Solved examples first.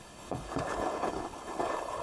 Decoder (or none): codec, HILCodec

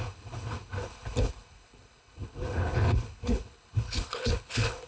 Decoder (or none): codec, HILCodec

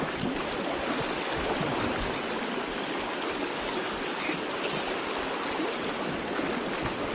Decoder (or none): none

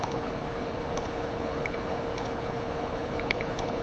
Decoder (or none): codec, HILCodec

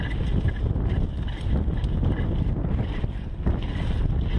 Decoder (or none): none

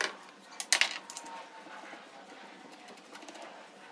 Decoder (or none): none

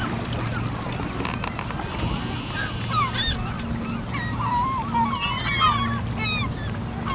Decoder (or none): none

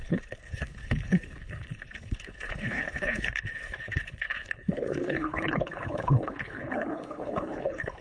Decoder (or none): codec, HILCodec